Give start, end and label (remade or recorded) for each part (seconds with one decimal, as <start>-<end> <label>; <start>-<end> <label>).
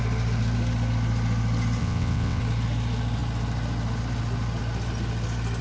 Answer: 0.0-1.8 recorded; 1.8-2.4 remade; 2.4-5.6 recorded